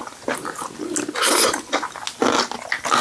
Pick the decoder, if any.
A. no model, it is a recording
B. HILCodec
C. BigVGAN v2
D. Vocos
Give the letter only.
A